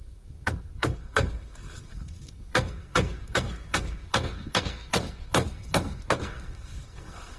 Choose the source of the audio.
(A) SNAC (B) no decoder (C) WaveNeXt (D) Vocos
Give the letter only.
A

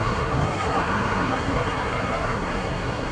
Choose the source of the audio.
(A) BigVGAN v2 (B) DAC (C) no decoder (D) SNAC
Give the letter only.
D